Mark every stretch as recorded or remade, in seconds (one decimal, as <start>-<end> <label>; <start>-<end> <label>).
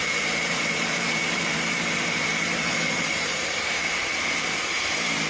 0.0-2.3 remade; 2.3-2.9 recorded; 2.9-5.3 remade